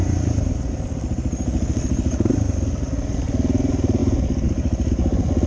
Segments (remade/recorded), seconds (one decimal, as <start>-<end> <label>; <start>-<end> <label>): 0.0-5.5 recorded